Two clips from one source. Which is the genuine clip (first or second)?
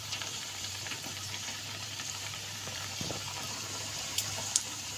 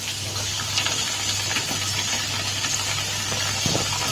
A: second